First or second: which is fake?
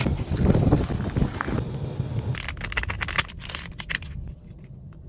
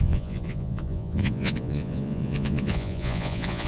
second